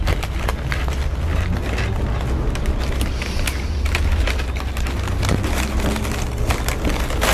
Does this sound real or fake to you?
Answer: real